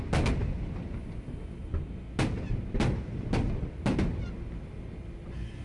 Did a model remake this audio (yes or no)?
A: no